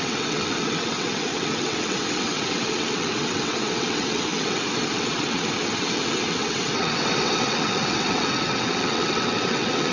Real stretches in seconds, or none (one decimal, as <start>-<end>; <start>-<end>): none